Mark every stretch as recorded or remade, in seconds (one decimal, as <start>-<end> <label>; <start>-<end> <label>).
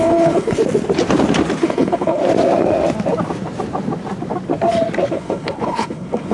0.0-0.6 remade; 0.6-1.6 recorded; 1.6-2.2 remade; 2.2-5.1 recorded; 5.1-6.3 remade